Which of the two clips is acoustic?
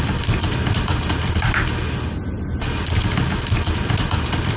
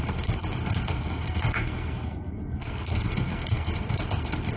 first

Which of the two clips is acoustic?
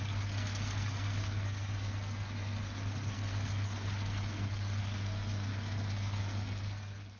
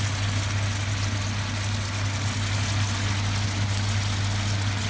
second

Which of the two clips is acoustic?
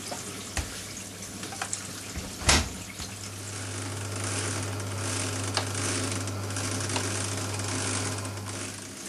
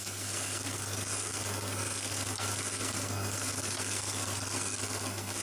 first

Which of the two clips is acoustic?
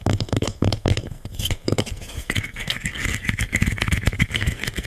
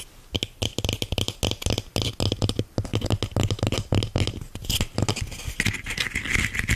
second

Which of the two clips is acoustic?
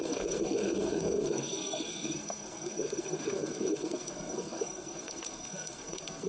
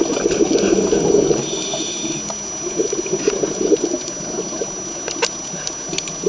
second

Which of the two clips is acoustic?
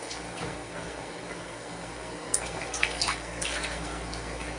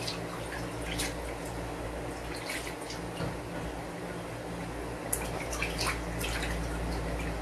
second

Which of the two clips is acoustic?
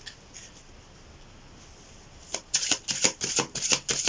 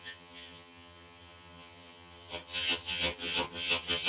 first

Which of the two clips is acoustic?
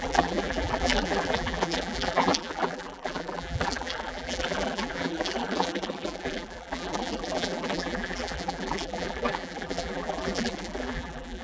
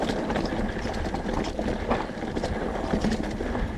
second